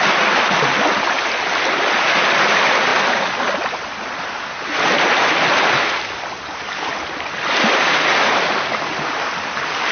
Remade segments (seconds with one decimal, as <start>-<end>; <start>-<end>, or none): none

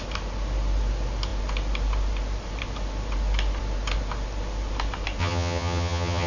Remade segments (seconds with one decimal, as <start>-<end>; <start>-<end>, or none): 5.2-6.3

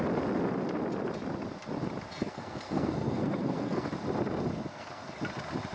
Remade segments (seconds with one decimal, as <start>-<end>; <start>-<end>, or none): 2.2-3.9; 4.7-5.2

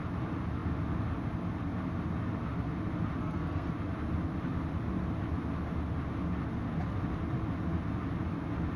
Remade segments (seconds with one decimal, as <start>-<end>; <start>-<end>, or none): 3.2-3.7

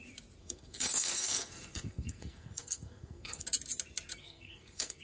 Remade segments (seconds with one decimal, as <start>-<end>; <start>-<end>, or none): 0.4-3.4; 4.2-5.0

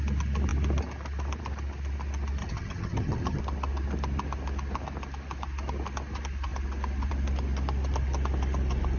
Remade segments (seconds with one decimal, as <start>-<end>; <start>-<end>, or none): 2.4-3.4

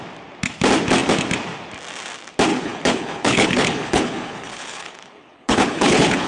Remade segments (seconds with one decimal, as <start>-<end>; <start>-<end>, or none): 2.5-6.3